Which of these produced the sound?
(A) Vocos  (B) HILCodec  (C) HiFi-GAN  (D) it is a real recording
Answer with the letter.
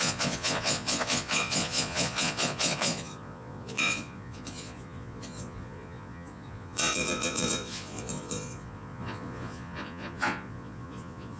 A